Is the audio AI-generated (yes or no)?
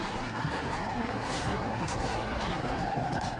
yes